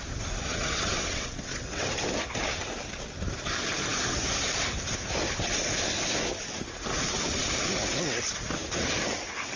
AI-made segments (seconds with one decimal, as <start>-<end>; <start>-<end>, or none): 0.5-1.9